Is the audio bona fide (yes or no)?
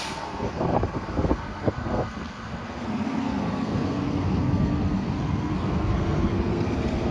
no